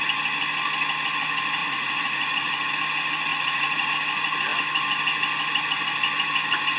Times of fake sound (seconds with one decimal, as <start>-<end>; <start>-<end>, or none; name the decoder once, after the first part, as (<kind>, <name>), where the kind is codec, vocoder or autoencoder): 1.6-2.7 (vocoder, Vocos); 3.3-3.9